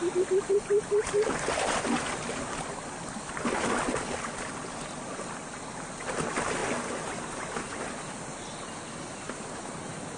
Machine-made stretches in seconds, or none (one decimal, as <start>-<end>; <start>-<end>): none